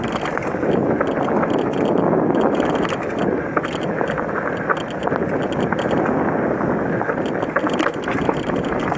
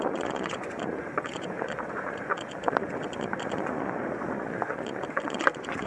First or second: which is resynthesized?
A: second